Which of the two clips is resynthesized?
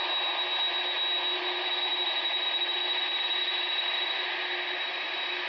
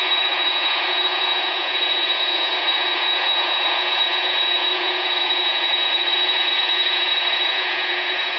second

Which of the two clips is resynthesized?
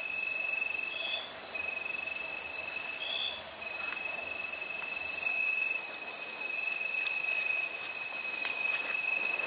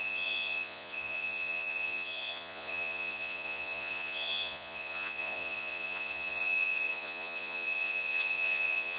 second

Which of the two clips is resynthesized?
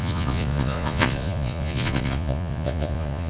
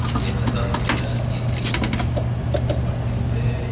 first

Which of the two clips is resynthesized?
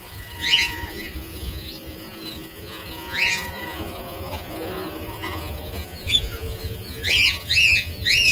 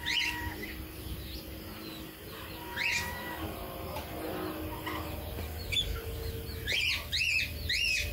first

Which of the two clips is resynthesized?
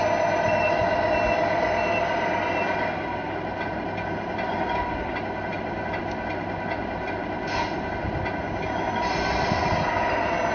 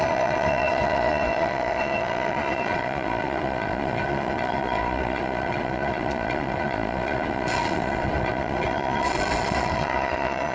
second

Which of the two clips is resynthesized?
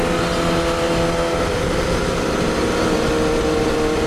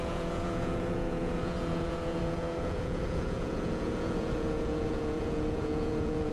second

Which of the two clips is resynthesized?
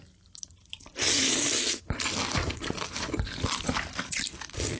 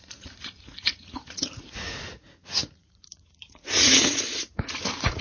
second